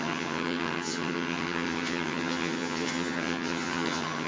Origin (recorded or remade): remade